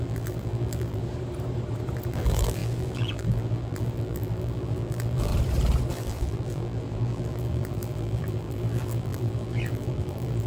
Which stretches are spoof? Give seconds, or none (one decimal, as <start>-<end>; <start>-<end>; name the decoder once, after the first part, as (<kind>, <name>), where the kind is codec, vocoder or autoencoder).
0.0-1.0 (vocoder, BigVGAN v2); 2.1-5.3; 5.9-10.5